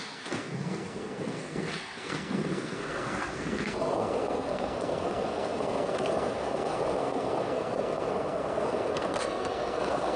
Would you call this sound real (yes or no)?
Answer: no